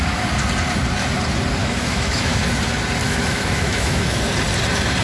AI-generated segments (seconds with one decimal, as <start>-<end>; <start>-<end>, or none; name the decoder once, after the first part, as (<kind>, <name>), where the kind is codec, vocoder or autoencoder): 1.6-2.4 (autoencoder, DAC-VAE); 3.0-4.2